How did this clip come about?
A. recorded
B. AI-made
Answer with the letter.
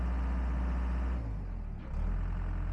A